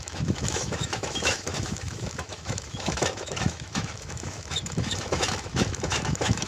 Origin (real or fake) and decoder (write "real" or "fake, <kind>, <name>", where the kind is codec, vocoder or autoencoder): fake, autoencoder, DAC-VAE